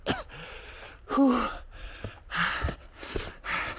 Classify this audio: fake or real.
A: real